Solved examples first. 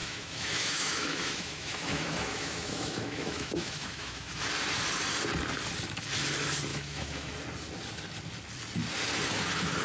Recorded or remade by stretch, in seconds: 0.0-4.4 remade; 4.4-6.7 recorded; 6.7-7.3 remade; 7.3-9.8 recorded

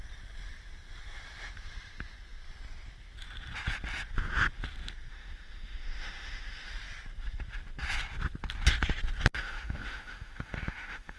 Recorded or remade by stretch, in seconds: 0.0-5.1 recorded; 5.1-6.7 remade; 6.7-9.3 recorded; 9.3-11.2 remade

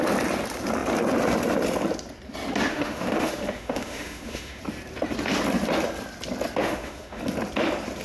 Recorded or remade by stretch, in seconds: 0.0-2.7 recorded; 2.7-4.6 remade; 4.6-6.6 recorded; 6.6-7.2 remade; 7.2-8.0 recorded

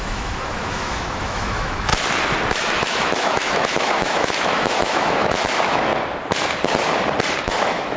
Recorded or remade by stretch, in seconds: 0.0-1.9 remade; 1.9-2.5 recorded; 2.5-5.9 remade; 5.9-7.4 recorded; 7.4-8.0 remade

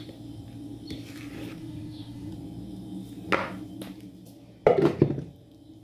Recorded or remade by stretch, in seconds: 0.0-1.6 recorded; 1.6-2.3 remade; 2.3-5.8 recorded

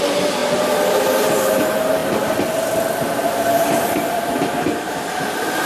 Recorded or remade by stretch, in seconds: 0.0-5.7 recorded

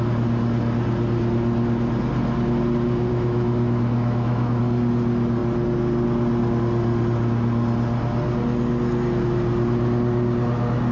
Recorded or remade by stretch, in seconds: 0.0-3.1 recorded; 3.1-4.6 remade; 4.6-10.9 recorded